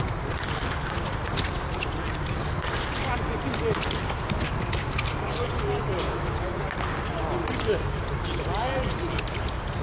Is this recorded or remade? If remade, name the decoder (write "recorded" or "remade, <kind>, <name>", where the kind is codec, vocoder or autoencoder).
recorded